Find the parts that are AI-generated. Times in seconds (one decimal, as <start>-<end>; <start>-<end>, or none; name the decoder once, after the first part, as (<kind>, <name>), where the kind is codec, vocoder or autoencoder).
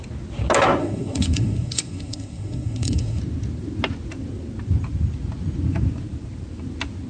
0.8-3.2 (codec, SNAC)